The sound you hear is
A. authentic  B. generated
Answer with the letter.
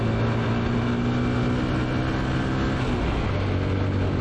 A